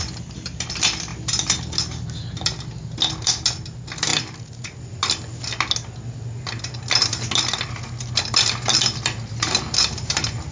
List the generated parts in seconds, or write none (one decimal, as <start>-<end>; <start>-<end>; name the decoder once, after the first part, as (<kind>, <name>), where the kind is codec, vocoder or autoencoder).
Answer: none